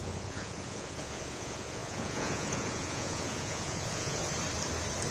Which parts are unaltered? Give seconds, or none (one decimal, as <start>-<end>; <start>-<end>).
4.2-5.1